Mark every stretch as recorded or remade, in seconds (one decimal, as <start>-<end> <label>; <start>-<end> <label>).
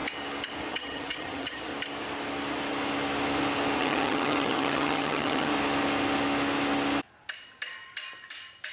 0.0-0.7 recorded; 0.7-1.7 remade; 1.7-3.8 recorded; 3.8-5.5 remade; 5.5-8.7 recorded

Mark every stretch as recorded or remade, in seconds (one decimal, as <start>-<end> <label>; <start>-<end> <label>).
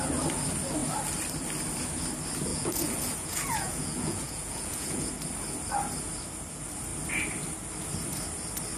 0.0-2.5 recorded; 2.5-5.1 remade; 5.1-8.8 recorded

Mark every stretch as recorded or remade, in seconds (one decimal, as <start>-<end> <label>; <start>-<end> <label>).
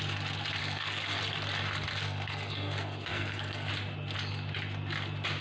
0.0-0.6 recorded; 0.6-1.2 remade; 1.2-1.9 recorded; 1.9-3.7 remade; 3.7-5.4 recorded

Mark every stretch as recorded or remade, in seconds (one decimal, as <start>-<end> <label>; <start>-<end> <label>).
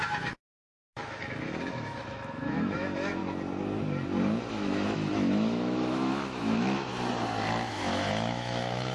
0.0-3.2 remade; 3.2-4.5 recorded; 4.5-6.9 remade; 6.9-7.7 recorded; 7.7-8.9 remade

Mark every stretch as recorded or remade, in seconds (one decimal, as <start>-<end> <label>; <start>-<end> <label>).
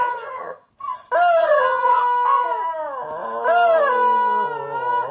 0.0-0.7 remade; 0.7-1.4 recorded; 1.4-2.0 remade; 2.0-5.1 recorded